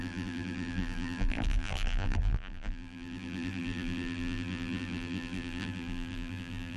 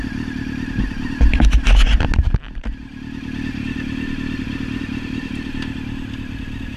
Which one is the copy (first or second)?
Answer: first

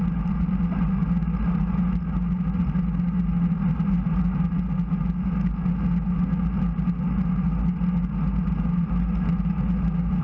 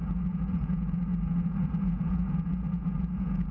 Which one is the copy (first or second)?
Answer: second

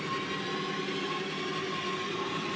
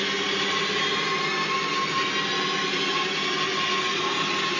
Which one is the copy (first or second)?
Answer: first